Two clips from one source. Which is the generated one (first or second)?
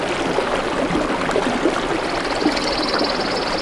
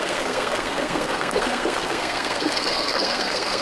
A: second